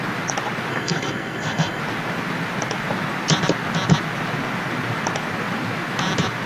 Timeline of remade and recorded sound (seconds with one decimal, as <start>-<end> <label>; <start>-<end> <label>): 0.0-0.7 recorded; 0.7-1.8 remade; 1.8-6.5 recorded